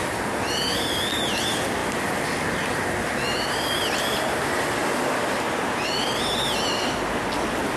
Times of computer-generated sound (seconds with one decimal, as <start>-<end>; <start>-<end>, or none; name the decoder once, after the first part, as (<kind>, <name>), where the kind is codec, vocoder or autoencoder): none